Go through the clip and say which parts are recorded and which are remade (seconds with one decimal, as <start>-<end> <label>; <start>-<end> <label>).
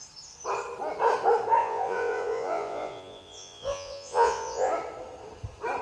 0.0-1.6 recorded; 1.6-4.7 remade; 4.7-5.8 recorded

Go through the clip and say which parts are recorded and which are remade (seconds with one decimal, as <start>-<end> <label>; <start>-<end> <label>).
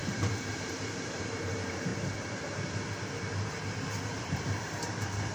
0.0-1.9 remade; 1.9-4.1 recorded; 4.1-5.3 remade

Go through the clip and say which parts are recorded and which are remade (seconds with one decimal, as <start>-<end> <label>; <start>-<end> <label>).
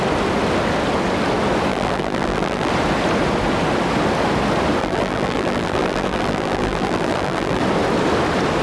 0.0-1.7 recorded; 1.7-2.7 remade; 2.7-4.8 recorded; 4.8-7.6 remade; 7.6-8.6 recorded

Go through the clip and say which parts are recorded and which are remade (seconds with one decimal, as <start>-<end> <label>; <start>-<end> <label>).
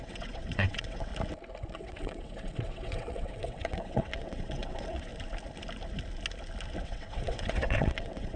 0.0-1.1 remade; 1.1-1.7 recorded; 1.7-5.1 remade; 5.1-6.8 recorded; 6.8-8.4 remade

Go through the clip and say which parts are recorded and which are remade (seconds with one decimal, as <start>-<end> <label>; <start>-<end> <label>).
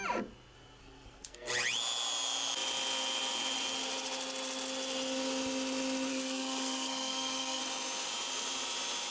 0.0-0.8 recorded; 0.8-1.5 remade; 1.5-6.1 recorded; 6.1-7.6 remade; 7.6-9.1 recorded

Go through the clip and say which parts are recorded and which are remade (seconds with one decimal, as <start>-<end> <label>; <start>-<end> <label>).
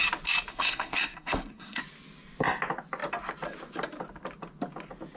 0.0-0.5 recorded; 0.5-1.8 remade; 1.8-5.2 recorded